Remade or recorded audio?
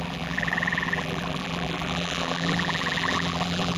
remade